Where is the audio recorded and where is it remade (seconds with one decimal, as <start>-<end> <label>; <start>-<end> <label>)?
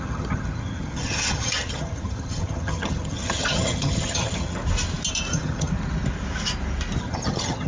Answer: 0.0-4.6 remade; 4.6-5.3 recorded; 5.3-5.7 remade; 5.7-7.0 recorded; 7.0-7.7 remade